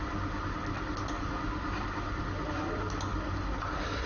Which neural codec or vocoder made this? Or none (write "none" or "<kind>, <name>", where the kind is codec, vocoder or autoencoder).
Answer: none